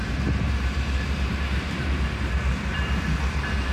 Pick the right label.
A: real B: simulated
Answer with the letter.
B